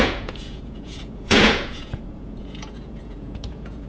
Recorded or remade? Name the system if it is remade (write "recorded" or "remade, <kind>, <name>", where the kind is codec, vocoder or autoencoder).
remade, vocoder, Vocos